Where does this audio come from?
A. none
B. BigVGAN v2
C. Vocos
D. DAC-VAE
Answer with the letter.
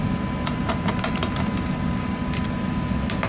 A